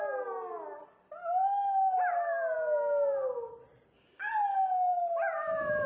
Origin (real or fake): real